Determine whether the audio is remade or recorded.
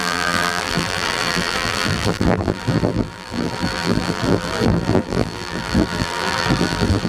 remade